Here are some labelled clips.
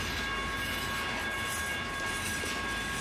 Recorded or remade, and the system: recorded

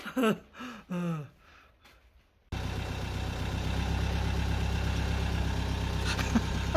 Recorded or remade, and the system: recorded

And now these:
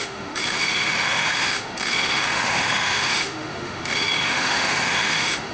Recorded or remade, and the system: remade, autoencoder, DAC-VAE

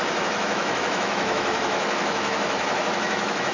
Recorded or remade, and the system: remade, autoencoder, DAC-VAE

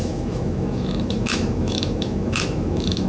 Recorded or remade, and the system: remade, autoencoder, DAC-VAE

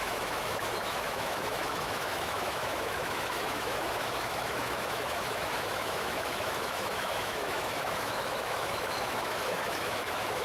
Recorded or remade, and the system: remade, autoencoder, DAC-VAE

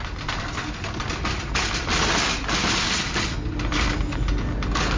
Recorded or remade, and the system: recorded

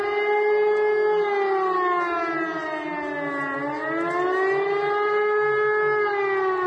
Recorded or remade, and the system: recorded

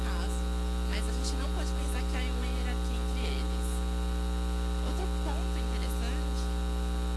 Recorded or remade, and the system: recorded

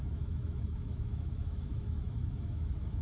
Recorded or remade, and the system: remade, autoencoder, DAC-VAE